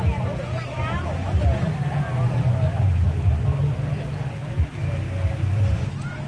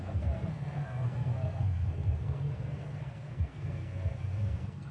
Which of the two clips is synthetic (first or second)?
second